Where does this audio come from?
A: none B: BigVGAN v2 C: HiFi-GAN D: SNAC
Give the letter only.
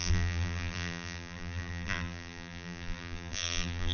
B